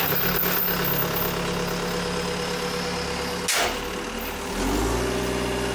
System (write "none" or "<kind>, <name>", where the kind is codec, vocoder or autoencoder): none